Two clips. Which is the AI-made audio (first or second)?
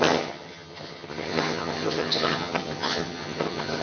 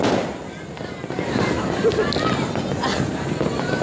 first